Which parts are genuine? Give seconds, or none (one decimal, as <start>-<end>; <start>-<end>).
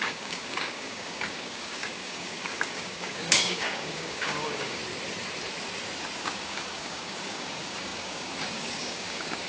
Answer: 4.8-6.2